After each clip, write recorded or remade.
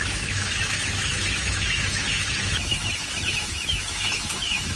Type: remade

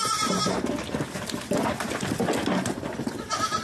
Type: recorded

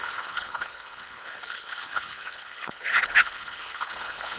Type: remade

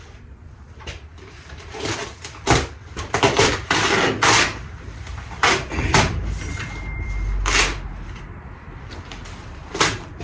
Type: remade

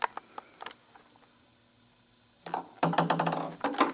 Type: recorded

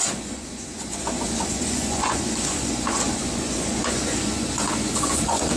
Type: remade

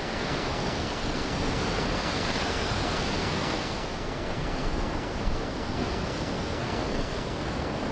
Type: remade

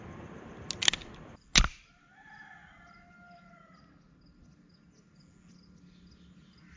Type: recorded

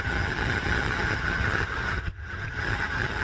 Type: remade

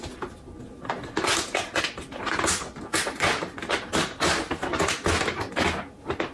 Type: recorded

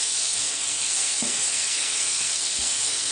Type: remade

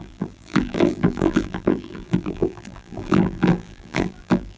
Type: remade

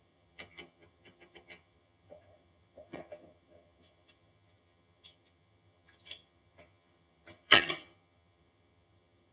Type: remade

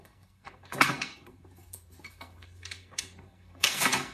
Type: remade